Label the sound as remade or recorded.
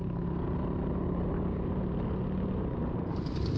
recorded